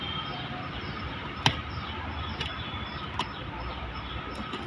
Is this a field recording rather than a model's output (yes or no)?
yes